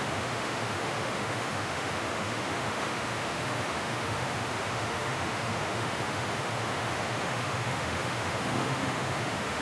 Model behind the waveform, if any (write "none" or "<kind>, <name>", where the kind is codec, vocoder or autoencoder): autoencoder, DAC-VAE